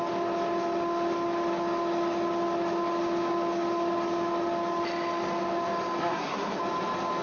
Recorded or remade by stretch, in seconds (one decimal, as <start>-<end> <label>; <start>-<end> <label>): 0.0-6.0 recorded; 6.0-6.6 remade; 6.6-7.2 recorded